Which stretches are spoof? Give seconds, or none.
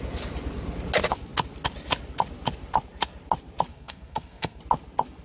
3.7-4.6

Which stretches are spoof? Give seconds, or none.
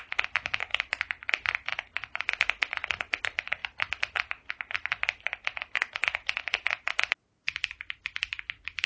none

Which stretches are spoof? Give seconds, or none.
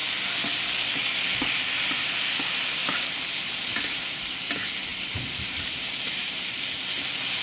2.8-4.3; 4.9-6.8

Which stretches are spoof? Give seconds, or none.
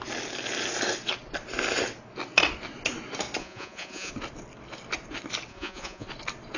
3.4-4.1; 5.5-6.1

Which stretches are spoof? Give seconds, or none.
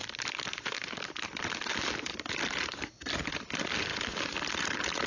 none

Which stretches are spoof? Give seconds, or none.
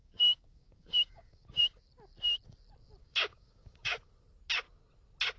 0.0-1.6; 3.0-4.1